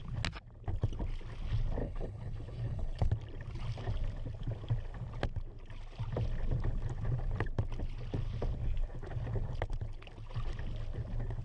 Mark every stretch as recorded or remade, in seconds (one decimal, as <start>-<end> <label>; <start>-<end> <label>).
0.0-1.8 recorded; 1.8-3.1 remade; 3.1-11.4 recorded